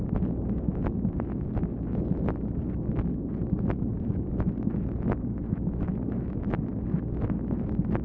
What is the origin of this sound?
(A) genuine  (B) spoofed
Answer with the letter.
A